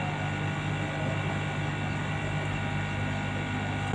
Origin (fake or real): real